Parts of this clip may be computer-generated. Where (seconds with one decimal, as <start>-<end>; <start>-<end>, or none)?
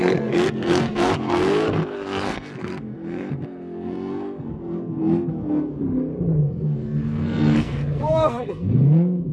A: 0.0-5.8; 6.4-9.3